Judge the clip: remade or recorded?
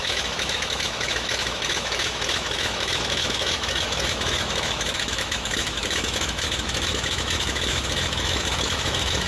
remade